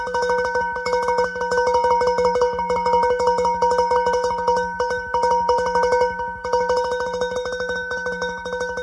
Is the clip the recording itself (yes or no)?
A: no